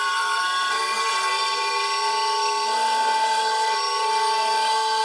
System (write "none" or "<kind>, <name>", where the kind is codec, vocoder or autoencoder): codec, SNAC